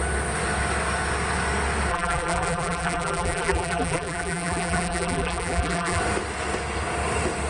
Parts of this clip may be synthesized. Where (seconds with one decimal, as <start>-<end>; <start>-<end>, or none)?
1.9-6.0